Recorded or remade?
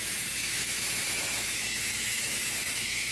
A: remade